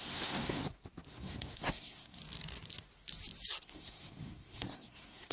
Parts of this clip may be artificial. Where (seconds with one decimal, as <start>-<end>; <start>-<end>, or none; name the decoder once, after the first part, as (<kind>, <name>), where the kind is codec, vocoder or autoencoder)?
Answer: 0.0-0.6 (codec, SNAC); 1.1-2.2; 3.6-5.3